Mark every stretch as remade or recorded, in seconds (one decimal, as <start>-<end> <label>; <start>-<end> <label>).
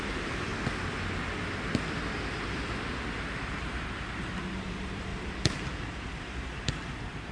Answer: 0.0-0.5 remade; 0.5-3.1 recorded; 3.1-5.1 remade; 5.1-6.1 recorded; 6.1-7.3 remade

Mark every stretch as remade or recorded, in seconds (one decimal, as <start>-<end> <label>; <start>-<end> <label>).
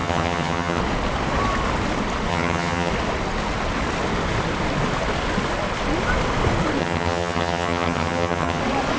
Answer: 0.0-0.8 remade; 0.8-2.3 recorded; 2.3-2.9 remade; 2.9-6.8 recorded; 6.8-8.6 remade; 8.6-9.0 recorded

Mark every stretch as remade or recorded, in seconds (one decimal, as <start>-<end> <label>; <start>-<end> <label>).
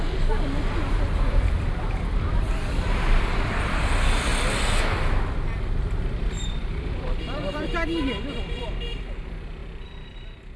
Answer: 0.0-4.3 remade; 4.3-6.0 recorded; 6.0-9.6 remade; 9.6-10.1 recorded; 10.1-10.6 remade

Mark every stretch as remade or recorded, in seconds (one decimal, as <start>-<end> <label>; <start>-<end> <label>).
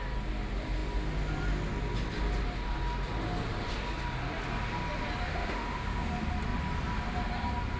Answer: 0.0-5.3 recorded; 5.3-6.1 remade; 6.1-7.8 recorded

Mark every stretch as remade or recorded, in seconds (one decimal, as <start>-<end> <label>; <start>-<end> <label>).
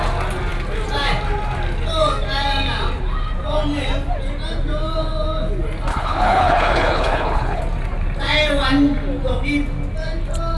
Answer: 0.0-5.9 recorded; 5.9-7.6 remade; 7.6-10.6 recorded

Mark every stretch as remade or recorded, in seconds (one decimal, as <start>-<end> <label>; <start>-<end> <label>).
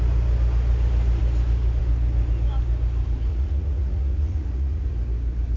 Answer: 0.0-3.3 recorded; 3.3-4.9 remade; 4.9-5.6 recorded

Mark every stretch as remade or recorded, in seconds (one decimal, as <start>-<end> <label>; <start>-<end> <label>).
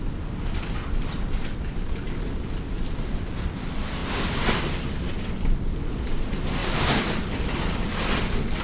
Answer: 0.0-1.7 recorded; 1.7-2.5 remade; 2.5-6.6 recorded; 6.6-7.3 remade; 7.3-8.6 recorded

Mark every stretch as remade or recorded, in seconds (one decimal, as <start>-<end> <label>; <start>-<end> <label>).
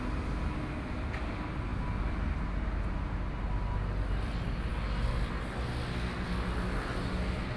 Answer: 0.0-7.6 recorded